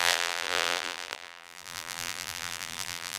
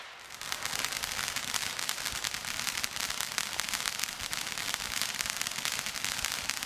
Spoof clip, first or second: first